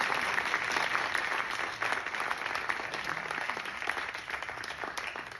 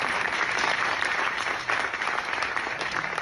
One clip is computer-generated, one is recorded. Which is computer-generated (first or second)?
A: second